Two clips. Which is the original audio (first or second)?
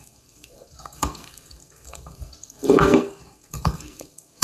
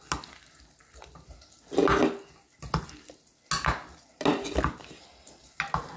second